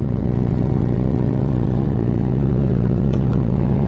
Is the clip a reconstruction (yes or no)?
yes